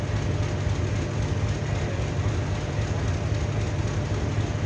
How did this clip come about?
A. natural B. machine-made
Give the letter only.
A